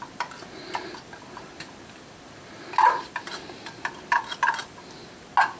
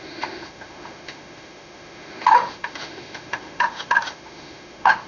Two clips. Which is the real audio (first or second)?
first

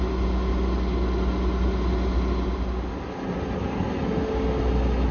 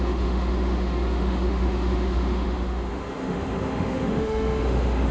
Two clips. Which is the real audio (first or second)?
first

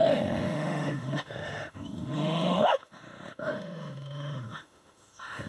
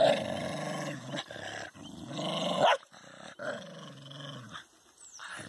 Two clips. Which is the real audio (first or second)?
second